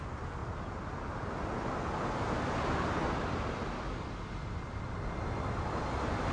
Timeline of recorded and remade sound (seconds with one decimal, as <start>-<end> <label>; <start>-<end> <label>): 0.0-6.3 recorded